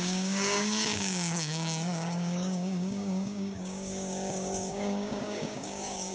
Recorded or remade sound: remade